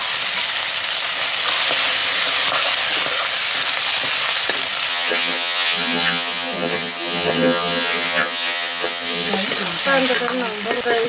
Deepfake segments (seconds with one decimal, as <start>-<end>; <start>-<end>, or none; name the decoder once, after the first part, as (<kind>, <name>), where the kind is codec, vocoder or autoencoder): 4.9-9.3 (vocoder, HiFi-GAN)